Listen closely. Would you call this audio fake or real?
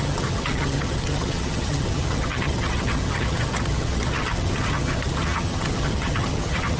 fake